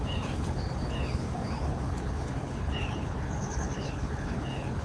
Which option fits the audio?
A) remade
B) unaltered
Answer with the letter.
A